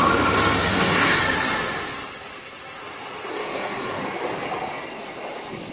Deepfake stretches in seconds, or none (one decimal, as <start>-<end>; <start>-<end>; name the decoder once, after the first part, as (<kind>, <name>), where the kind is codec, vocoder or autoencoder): 0.7-1.2 (codec, DAC); 3.3-4.0